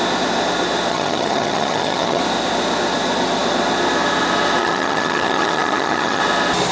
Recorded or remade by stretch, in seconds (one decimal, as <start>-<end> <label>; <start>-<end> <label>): 0.0-0.9 recorded; 0.9-2.2 remade; 2.2-4.6 recorded; 4.6-6.2 remade; 6.2-6.7 recorded